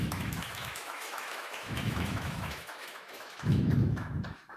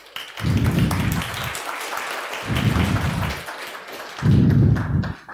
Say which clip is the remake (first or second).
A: first